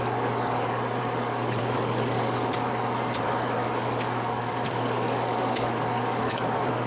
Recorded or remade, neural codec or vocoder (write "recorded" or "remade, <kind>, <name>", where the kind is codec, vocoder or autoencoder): remade, codec, DAC